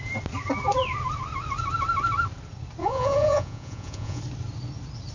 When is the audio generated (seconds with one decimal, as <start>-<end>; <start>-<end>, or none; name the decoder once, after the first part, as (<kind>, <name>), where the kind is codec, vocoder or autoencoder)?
2.8-4.2 (vocoder, Vocos)